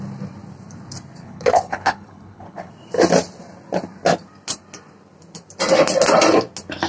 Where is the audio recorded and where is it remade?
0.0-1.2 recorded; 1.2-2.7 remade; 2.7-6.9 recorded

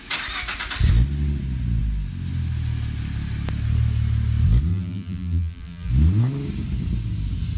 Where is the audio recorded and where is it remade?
0.0-4.7 recorded; 4.7-5.9 remade; 5.9-7.6 recorded

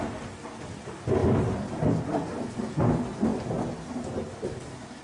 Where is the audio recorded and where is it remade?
0.0-3.3 remade; 3.3-4.4 recorded; 4.4-5.0 remade

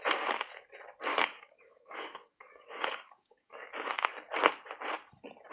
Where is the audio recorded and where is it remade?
0.0-1.1 recorded; 1.1-3.7 remade; 3.7-5.5 recorded

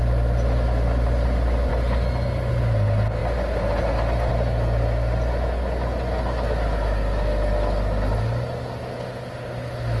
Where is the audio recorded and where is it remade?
0.0-10.0 recorded

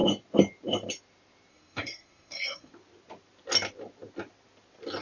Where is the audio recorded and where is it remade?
0.0-1.5 recorded; 1.5-2.7 remade; 2.7-5.0 recorded

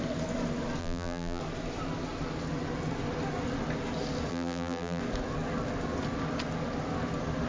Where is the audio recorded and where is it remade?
0.0-0.8 recorded; 0.8-1.4 remade; 1.4-4.3 recorded; 4.3-5.0 remade; 5.0-7.5 recorded